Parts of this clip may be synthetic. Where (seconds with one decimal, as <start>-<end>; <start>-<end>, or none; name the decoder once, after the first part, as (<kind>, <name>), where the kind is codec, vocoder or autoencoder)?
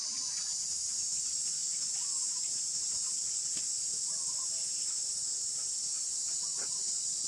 none